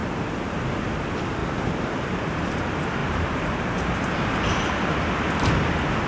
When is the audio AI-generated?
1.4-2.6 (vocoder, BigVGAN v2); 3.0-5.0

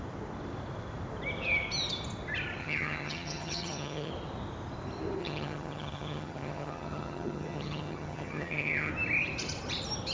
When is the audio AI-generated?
2.6-4.1 (vocoder, HiFi-GAN); 5.2-8.9

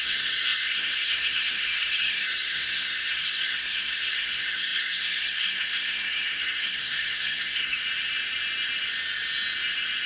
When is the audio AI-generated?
0.0-7.8 (codec, SNAC)

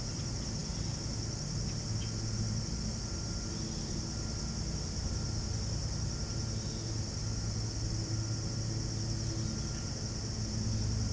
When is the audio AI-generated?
none

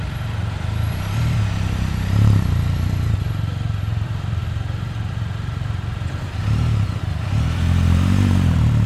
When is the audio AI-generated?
0.0-4.4 (vocoder, BigVGAN v2); 5.1-8.9

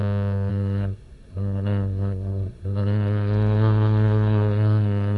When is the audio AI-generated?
0.5-5.2 (codec, SNAC)

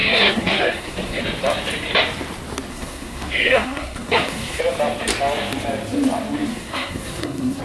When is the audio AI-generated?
0.0-1.2 (codec, SNAC); 2.7-4.6; 6.5-7.6